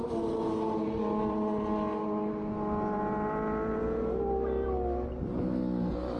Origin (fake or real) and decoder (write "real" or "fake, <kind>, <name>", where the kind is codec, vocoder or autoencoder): real